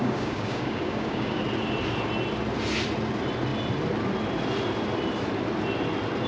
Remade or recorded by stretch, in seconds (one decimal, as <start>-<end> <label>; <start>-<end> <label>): 0.0-1.4 remade; 1.4-6.3 recorded